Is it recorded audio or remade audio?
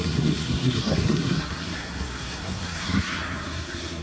remade